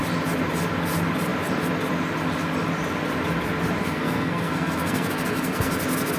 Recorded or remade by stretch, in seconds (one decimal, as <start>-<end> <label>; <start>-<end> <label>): 0.0-3.8 recorded; 3.8-5.7 remade; 5.7-6.2 recorded